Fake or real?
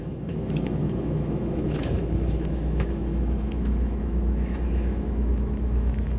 fake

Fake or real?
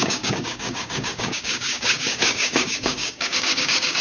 fake